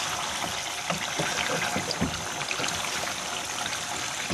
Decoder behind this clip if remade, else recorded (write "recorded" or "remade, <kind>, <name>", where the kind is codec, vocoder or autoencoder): recorded